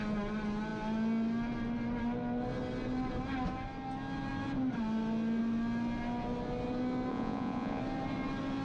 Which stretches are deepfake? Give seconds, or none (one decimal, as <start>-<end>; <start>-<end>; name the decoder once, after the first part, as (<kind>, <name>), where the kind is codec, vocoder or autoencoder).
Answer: 7.1-7.8 (vocoder, Vocos)